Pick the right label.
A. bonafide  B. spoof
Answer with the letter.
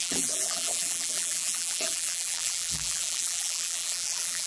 B